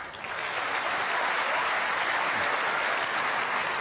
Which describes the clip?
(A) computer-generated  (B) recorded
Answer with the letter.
B